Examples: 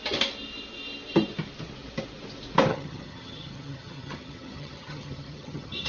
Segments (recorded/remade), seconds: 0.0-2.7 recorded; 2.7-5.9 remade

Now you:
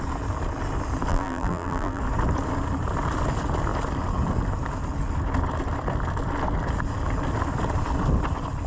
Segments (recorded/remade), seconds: 0.0-1.1 recorded; 1.1-2.0 remade; 2.0-8.7 recorded

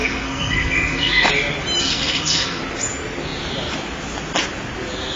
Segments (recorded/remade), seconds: 0.0-1.3 remade; 1.3-1.8 recorded; 1.8-2.6 remade; 2.6-5.2 recorded

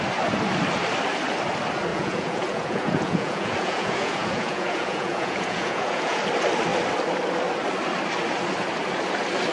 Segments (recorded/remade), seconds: 0.0-1.9 recorded; 1.9-6.2 remade; 6.2-9.5 recorded

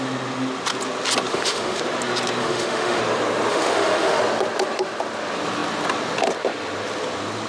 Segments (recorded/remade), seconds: 0.0-1.3 recorded; 1.3-1.8 remade; 1.8-2.4 recorded; 2.4-3.0 remade; 3.0-3.5 recorded; 3.5-4.2 remade; 4.2-7.5 recorded

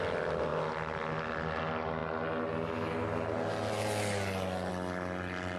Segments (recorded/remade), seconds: 0.0-5.6 recorded

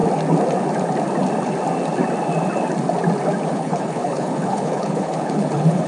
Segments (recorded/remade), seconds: 0.0-3.5 recorded; 3.5-5.9 remade

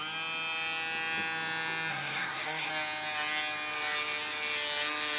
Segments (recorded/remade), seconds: 0.0-1.9 recorded; 1.9-2.7 remade; 2.7-5.2 recorded